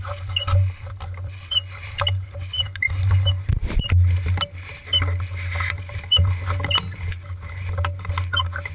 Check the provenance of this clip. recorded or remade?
recorded